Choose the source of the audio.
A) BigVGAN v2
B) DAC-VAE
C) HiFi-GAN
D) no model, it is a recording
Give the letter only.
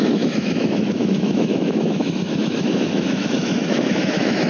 B